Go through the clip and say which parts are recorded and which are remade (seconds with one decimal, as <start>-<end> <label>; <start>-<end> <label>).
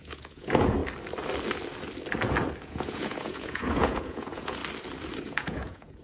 0.0-0.8 remade; 0.8-2.6 recorded; 2.6-4.6 remade; 4.6-5.2 recorded; 5.2-6.0 remade